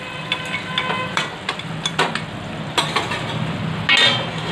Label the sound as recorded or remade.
recorded